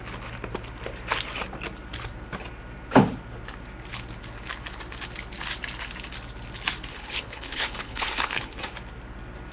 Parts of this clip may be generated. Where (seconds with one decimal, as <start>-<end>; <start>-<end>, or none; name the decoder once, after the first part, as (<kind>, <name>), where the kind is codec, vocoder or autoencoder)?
6.9-8.7 (codec, HILCodec)